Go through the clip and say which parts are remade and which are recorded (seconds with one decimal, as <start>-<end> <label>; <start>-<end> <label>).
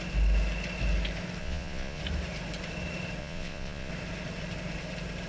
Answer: 0.0-1.4 recorded; 1.4-2.0 remade; 2.0-3.2 recorded; 3.2-3.9 remade; 3.9-5.3 recorded